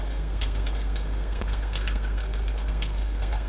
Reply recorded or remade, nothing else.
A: remade